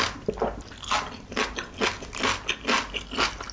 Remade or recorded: recorded